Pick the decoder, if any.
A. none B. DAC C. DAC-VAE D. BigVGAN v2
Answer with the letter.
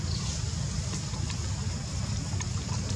A